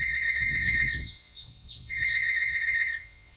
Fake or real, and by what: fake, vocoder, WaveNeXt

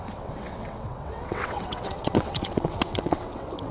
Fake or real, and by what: fake, vocoder, WaveNeXt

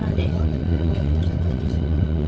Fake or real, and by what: fake, vocoder, WaveNeXt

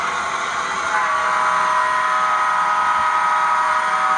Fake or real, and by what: real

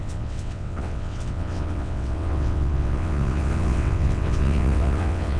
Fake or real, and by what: fake, vocoder, WaveNeXt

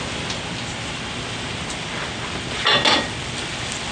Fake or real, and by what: real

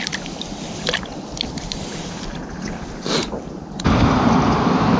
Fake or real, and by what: real